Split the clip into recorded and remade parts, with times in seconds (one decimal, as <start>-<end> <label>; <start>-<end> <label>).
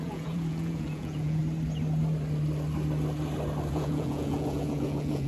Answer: 0.0-1.4 remade; 1.4-3.7 recorded; 3.7-5.3 remade